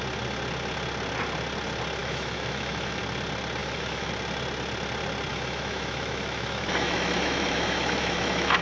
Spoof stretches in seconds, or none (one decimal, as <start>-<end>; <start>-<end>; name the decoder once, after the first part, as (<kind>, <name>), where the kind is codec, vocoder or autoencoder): 2.0-3.0 (autoencoder, DAC-VAE); 3.6-4.1; 5.3-8.6